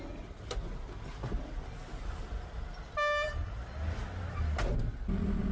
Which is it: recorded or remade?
recorded